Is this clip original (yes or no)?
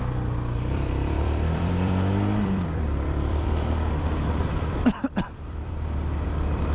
no